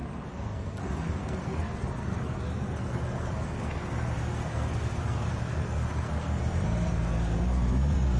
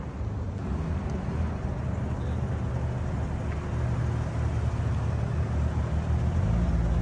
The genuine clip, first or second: second